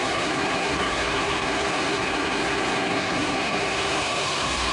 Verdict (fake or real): fake